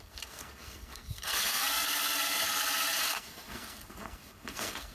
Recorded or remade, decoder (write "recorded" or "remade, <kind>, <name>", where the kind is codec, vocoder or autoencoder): remade, codec, SNAC